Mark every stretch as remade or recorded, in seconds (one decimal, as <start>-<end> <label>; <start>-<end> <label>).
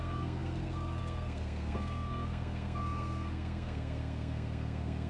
0.0-5.1 remade